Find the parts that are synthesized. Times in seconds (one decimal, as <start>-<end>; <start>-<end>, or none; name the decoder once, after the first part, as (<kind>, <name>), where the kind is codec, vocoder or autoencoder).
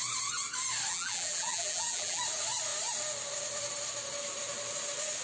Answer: 0.9-2.2 (vocoder, BigVGAN v2)